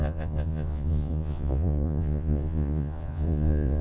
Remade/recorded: remade